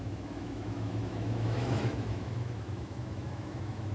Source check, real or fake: fake